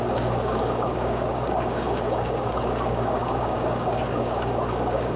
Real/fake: fake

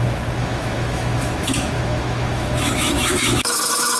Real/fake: fake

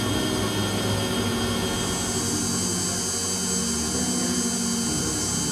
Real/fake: real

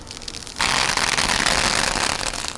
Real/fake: real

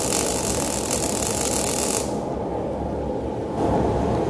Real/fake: real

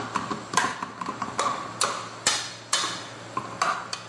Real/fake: real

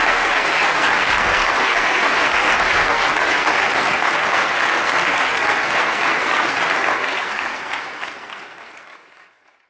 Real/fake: fake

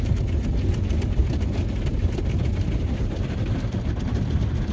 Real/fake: real